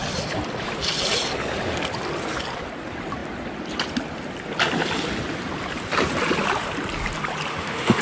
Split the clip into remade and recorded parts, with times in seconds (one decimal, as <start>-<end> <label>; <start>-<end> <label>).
0.0-7.5 recorded; 7.5-8.0 remade